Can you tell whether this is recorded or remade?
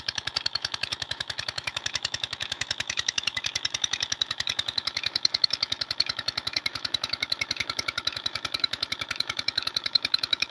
remade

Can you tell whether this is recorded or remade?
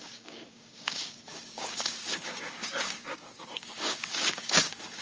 remade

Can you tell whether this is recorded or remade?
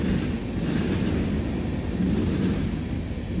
recorded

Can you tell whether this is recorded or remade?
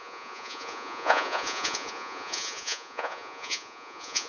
remade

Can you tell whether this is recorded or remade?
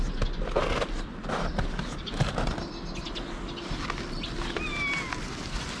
recorded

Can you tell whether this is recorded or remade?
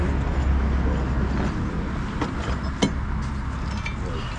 recorded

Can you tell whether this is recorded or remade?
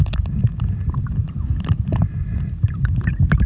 recorded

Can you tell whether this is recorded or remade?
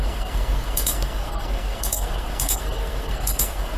remade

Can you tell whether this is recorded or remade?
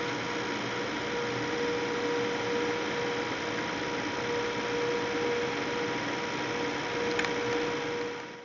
recorded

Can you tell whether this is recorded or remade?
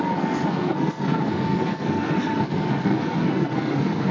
remade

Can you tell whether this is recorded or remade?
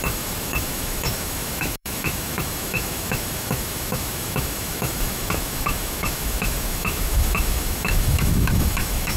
remade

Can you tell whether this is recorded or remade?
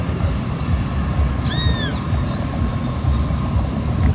recorded